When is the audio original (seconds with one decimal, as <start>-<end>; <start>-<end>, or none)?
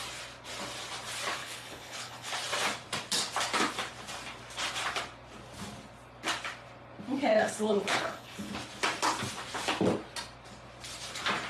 0.0-1.4; 2.3-7.3; 8.5-11.5